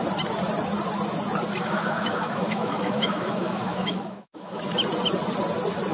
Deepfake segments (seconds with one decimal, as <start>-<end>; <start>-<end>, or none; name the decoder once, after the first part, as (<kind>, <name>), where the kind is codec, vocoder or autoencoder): 1.6-4.6 (autoencoder, DAC-VAE)